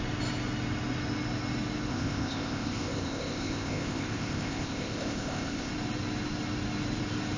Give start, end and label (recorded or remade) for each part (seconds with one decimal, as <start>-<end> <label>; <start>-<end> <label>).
0.0-1.9 recorded; 1.9-5.7 remade; 5.7-7.4 recorded